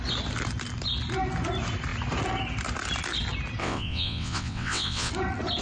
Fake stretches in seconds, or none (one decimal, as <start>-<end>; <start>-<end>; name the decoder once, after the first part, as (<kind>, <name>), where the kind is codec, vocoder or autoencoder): 3.6-5.1 (vocoder, WaveNeXt)